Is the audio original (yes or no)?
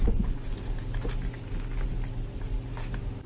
yes